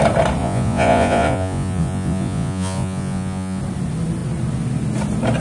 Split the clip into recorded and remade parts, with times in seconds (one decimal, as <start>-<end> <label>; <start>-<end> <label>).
0.0-0.4 recorded; 0.4-3.6 remade; 3.6-5.4 recorded